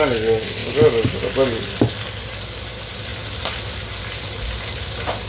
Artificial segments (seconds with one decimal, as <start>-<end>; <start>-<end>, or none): none